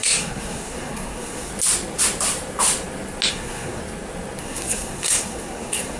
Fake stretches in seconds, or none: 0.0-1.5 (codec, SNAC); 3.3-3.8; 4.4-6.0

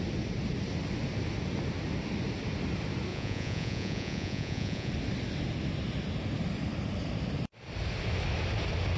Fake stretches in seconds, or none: 3.1-4.9 (vocoder, Vocos)

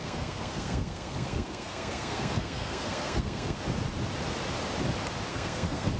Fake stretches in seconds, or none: 0.0-3.6 (codec, SNAC); 5.3-6.0

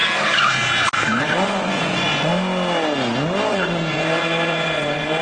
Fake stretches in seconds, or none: 1.2-2.3 (vocoder, Vocos); 3.5-5.2